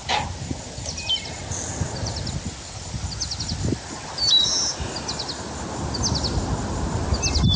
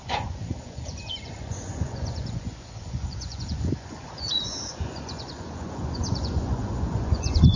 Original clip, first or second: first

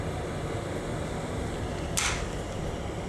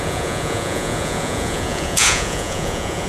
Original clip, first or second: first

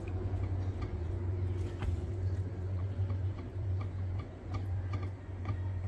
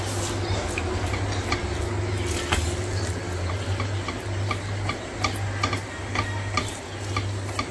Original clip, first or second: second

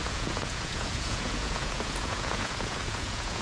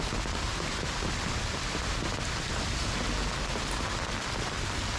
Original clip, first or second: second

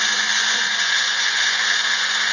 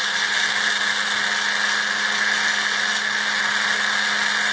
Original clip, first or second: second